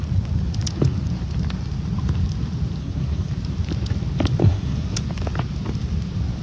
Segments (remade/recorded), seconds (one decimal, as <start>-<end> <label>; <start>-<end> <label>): 0.0-2.8 recorded; 2.8-3.3 remade; 3.3-4.4 recorded; 4.4-5.0 remade; 5.0-6.4 recorded